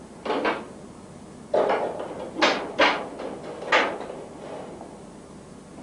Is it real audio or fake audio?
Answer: real